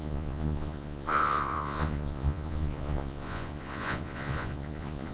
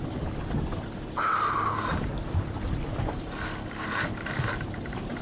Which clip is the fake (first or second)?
first